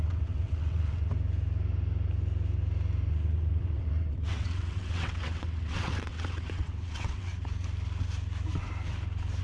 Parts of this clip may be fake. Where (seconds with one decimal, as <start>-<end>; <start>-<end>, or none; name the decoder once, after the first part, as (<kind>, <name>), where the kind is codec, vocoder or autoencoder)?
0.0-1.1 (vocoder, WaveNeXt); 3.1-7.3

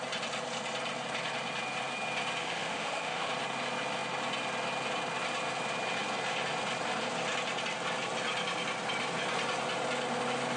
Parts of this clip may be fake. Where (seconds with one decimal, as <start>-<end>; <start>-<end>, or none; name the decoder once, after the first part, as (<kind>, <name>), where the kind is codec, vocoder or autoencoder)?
2.4-3.3 (autoencoder, DAC-VAE)

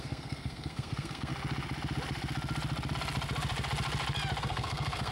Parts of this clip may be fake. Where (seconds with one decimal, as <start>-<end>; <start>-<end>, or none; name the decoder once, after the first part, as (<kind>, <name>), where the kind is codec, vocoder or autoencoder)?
0.0-1.3 (codec, SNAC); 4.4-5.1